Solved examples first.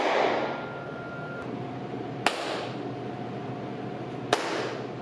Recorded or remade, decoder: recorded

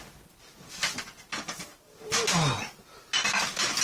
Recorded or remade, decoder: recorded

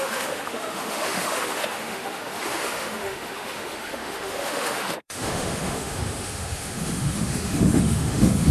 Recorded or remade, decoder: remade, autoencoder, DAC-VAE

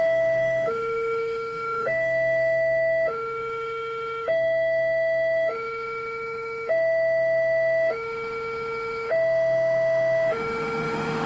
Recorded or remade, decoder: remade, autoencoder, DAC-VAE